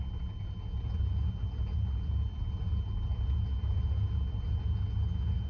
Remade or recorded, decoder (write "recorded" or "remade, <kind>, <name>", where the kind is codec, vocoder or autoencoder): recorded